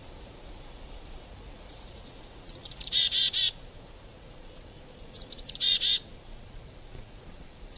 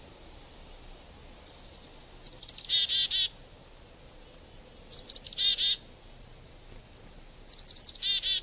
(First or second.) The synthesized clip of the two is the first